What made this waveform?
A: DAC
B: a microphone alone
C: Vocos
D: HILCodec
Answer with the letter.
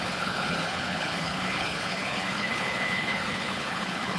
D